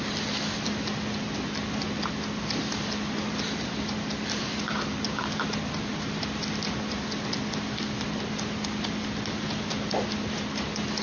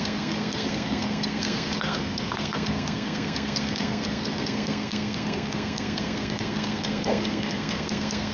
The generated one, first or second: second